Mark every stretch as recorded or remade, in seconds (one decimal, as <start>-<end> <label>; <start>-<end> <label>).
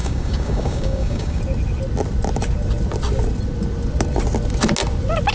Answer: 0.0-1.4 remade; 1.4-5.3 recorded